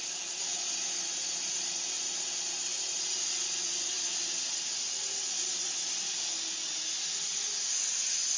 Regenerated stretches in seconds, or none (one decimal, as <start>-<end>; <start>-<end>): none